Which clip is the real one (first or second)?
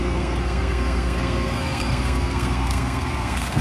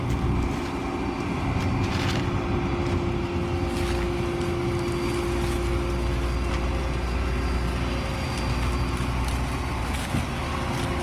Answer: second